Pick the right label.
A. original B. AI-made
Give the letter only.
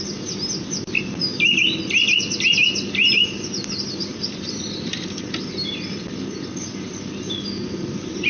A